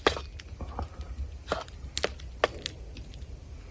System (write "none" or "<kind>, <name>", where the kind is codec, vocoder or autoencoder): none